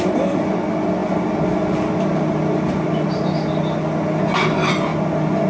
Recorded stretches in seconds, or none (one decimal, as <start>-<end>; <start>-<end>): 0.0-5.5